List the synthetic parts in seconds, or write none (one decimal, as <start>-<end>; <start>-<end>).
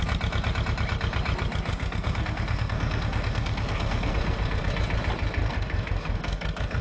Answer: 1.7-4.7; 5.4-6.8